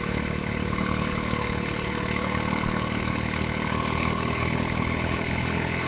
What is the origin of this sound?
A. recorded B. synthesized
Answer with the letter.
B